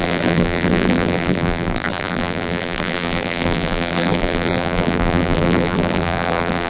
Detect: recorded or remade remade